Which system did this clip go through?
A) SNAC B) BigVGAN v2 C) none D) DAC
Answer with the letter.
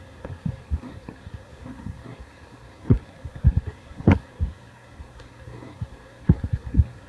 A